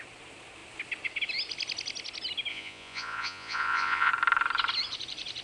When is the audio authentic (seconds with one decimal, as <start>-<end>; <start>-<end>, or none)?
0.0-2.5; 4.1-5.4